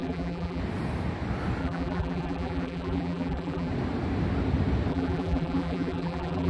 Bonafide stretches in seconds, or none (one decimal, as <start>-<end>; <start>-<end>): 0.6-1.6; 3.7-4.9